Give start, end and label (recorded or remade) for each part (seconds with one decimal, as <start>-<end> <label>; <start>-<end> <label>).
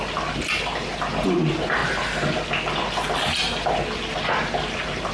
0.0-5.1 recorded